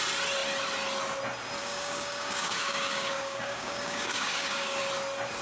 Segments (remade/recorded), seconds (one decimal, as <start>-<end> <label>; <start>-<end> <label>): 0.0-1.6 recorded; 1.6-4.8 remade; 4.8-5.4 recorded